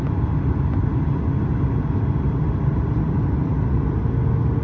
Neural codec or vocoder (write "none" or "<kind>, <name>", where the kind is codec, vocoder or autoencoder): none